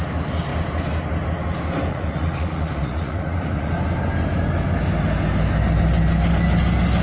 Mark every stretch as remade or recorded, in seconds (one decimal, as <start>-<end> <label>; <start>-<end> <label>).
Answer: 0.0-1.9 recorded; 1.9-3.7 remade; 3.7-7.0 recorded